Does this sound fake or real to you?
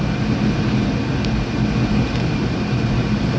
real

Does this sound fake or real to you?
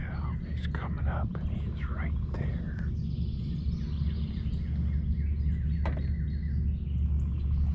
real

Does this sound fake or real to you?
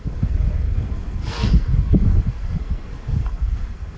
fake